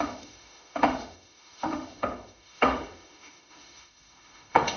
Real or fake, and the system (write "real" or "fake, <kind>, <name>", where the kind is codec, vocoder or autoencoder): fake, autoencoder, DAC-VAE